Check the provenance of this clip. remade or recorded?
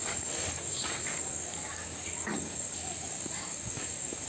remade